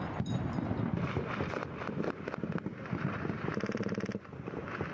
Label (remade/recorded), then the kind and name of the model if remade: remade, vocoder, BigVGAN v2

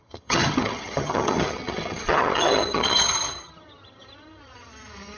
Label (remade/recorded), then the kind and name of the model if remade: remade, vocoder, HiFi-GAN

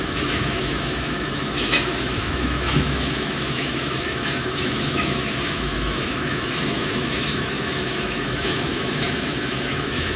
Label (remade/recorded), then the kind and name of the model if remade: remade, autoencoder, DAC-VAE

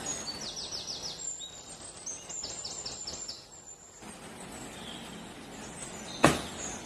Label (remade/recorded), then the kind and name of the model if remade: recorded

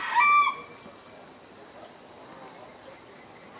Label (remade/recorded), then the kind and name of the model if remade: recorded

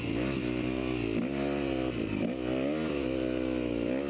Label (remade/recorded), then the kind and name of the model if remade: recorded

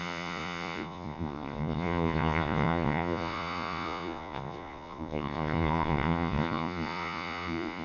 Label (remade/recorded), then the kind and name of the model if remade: remade, vocoder, Vocos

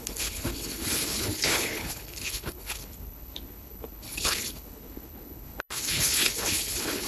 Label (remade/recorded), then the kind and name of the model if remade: remade, codec, HILCodec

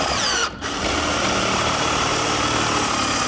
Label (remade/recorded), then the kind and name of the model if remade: recorded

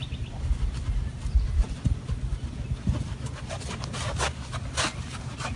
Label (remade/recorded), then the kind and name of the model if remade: recorded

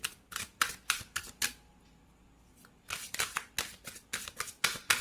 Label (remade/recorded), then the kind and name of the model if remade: recorded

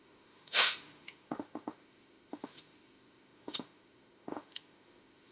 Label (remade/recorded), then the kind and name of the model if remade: remade, autoencoder, DAC-VAE